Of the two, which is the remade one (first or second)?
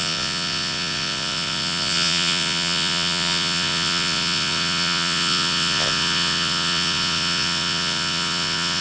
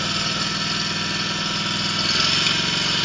first